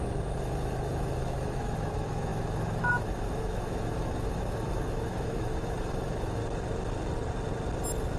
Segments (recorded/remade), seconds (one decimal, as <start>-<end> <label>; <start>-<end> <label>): 0.0-6.4 remade; 6.4-8.2 recorded